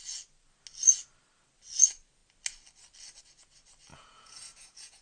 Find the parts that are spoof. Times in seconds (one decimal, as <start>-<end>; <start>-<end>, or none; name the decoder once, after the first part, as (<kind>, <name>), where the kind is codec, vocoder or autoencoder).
3.9-5.0 (vocoder, Vocos)